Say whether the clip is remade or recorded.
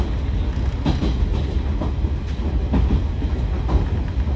recorded